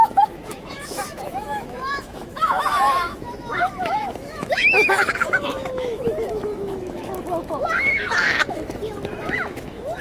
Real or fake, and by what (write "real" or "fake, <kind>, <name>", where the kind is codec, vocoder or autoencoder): fake, autoencoder, DAC-VAE